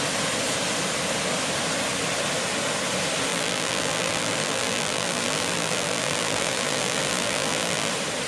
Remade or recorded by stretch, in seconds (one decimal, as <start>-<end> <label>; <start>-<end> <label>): 0.0-3.3 recorded; 3.3-7.9 remade; 7.9-8.3 recorded